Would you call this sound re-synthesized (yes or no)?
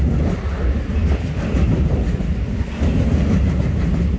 no